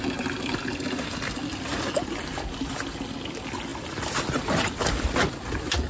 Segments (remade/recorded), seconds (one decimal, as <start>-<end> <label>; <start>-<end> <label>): 0.0-1.7 recorded; 1.7-2.2 remade; 2.2-3.7 recorded; 3.7-5.3 remade; 5.3-5.9 recorded